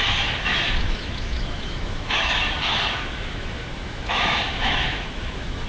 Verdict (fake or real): fake